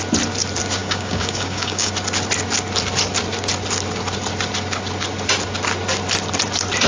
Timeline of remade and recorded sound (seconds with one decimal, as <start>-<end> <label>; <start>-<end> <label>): 0.0-0.8 recorded; 0.8-1.9 remade; 1.9-6.9 recorded